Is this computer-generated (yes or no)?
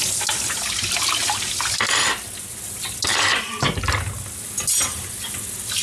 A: no